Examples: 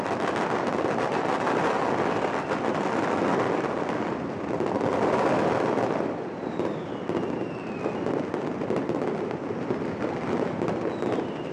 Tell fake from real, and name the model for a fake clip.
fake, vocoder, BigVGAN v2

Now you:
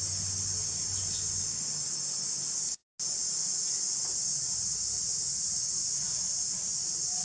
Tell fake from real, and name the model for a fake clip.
real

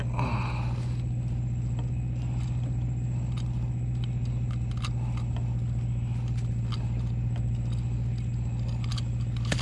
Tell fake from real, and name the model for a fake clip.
real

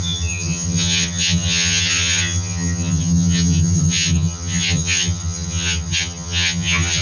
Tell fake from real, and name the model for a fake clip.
fake, vocoder, HiFi-GAN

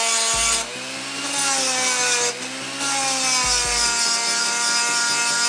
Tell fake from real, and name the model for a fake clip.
real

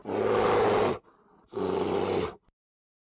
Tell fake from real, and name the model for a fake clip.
real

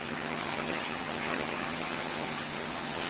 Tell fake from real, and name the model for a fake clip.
fake, vocoder, HiFi-GAN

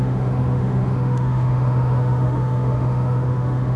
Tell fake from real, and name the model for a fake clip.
fake, autoencoder, DAC-VAE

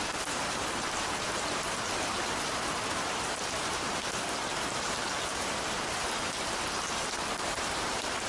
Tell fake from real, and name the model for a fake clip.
fake, vocoder, BigVGAN v2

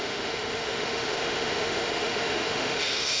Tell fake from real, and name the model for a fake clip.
fake, autoencoder, DAC-VAE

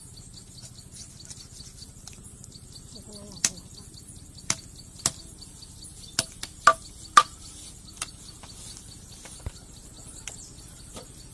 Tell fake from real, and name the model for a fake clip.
real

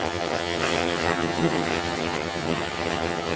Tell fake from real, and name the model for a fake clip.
fake, vocoder, HiFi-GAN